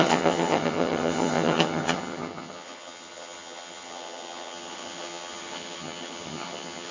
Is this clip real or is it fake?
fake